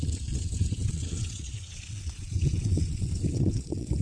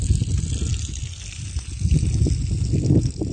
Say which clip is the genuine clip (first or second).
second